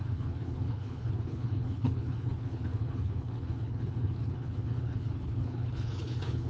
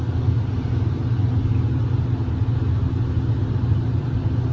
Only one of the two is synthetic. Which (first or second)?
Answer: first